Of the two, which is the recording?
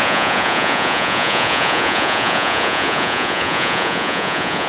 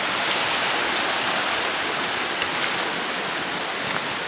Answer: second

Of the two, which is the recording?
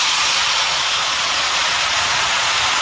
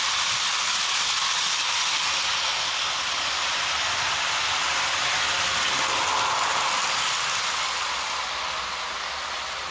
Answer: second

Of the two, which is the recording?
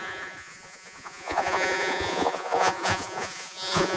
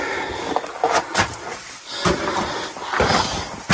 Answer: second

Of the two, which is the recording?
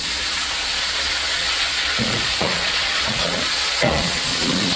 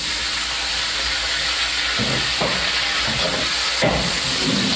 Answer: second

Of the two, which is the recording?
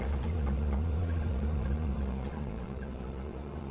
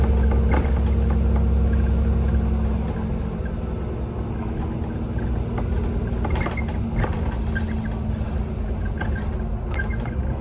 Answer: second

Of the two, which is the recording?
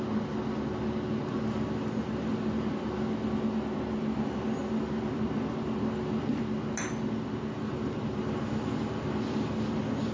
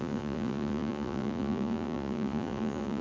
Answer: first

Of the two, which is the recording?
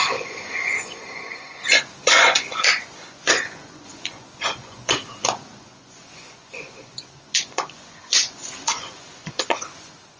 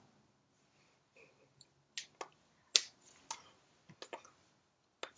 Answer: second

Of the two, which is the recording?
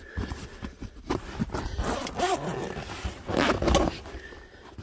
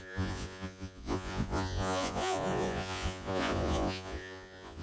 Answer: first